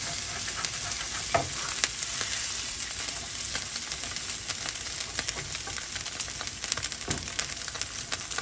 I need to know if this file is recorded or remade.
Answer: recorded